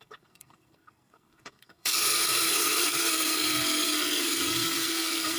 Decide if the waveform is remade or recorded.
remade